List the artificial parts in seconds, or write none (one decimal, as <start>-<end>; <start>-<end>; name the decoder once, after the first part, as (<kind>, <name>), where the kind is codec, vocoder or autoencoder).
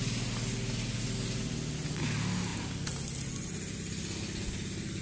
none